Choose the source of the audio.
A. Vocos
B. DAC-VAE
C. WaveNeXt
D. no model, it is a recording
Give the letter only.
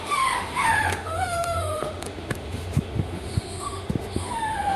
B